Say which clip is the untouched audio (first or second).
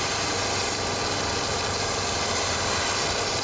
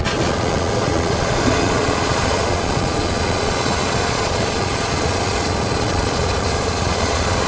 first